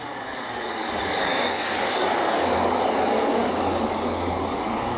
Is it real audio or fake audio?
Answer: fake